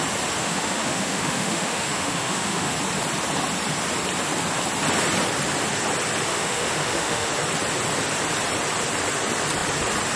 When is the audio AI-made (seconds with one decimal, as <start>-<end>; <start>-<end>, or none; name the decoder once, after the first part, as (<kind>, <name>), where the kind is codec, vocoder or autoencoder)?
0.4-2.7 (autoencoder, DAC-VAE); 6.3-7.3